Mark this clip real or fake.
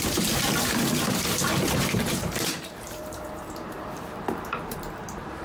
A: fake